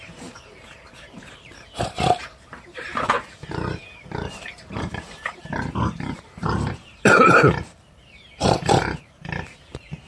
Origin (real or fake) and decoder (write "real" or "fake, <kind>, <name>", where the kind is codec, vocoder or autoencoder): fake, vocoder, BigVGAN v2